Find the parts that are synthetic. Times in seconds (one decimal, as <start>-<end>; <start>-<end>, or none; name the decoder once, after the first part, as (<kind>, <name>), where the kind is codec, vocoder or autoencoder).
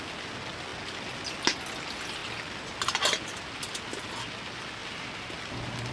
none